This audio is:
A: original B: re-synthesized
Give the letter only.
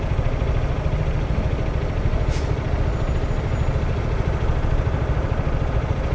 A